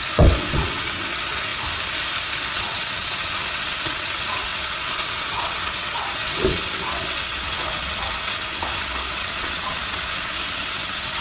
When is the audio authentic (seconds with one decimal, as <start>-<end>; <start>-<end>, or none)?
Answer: 1.5-2.5